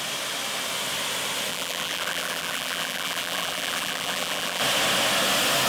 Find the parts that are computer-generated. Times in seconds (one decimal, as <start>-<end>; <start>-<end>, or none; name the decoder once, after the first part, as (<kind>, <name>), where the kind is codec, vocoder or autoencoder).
1.5-4.6 (vocoder, BigVGAN v2)